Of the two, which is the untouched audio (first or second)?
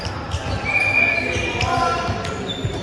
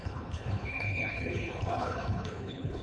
first